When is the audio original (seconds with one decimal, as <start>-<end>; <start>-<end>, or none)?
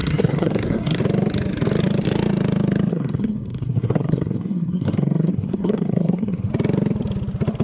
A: 1.0-2.9; 6.5-7.6